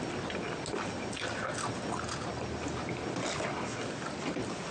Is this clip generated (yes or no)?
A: no